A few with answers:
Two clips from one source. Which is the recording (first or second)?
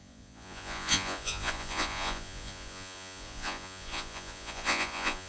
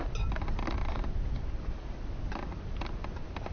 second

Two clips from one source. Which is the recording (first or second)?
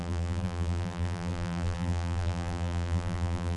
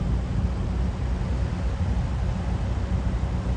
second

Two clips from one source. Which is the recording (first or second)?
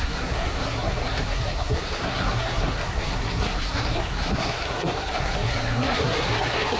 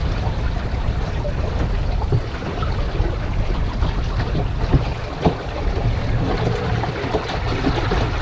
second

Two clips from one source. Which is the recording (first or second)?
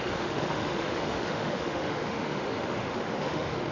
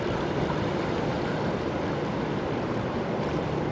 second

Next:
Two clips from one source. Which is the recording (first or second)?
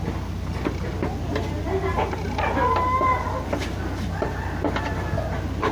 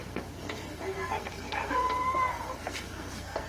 first